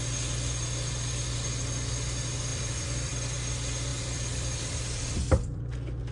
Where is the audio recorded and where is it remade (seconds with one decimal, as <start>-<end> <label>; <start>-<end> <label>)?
0.0-2.5 recorded; 2.5-3.1 remade; 3.1-3.9 recorded; 3.9-5.6 remade; 5.6-6.1 recorded